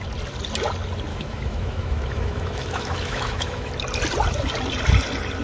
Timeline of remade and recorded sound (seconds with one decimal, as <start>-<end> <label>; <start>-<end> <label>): 0.0-1.1 recorded; 1.1-3.7 remade; 3.7-5.4 recorded